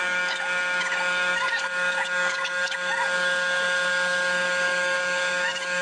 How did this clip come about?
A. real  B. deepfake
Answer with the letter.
B